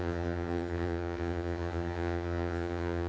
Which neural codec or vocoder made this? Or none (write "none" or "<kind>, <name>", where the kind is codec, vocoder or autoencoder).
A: vocoder, HiFi-GAN